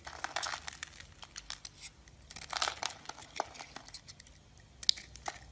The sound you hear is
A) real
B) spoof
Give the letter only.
A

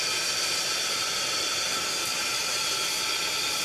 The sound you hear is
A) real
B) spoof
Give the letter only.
A